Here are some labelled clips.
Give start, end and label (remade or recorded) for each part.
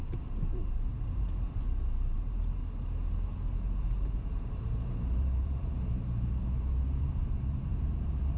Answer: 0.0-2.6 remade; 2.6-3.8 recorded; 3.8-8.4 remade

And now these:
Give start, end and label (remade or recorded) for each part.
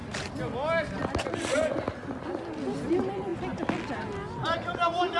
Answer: 0.0-5.2 recorded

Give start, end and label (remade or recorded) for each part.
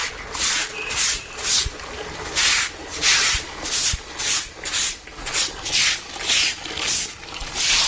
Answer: 0.0-7.9 recorded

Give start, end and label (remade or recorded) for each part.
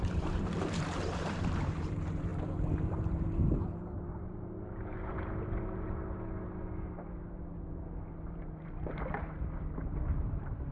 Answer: 0.0-2.3 remade; 2.3-3.7 recorded; 3.7-10.7 remade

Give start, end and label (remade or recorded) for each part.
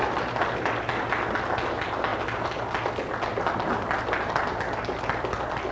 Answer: 0.0-5.7 recorded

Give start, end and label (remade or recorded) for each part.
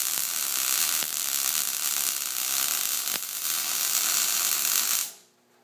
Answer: 0.0-1.7 recorded; 1.7-5.1 remade; 5.1-5.6 recorded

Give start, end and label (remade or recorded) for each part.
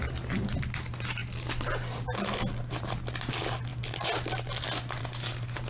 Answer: 0.0-0.5 remade; 0.5-5.7 recorded